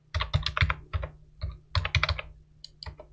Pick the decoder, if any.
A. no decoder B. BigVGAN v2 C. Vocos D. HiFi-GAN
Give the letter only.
A